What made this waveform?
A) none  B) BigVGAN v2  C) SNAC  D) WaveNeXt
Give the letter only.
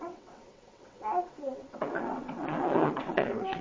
D